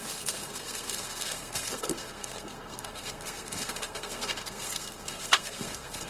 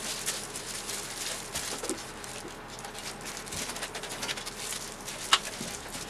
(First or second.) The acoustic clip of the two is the second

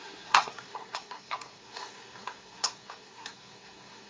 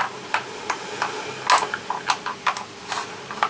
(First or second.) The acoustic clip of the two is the second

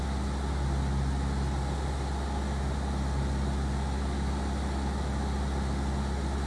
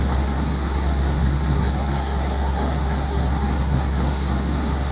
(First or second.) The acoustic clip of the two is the first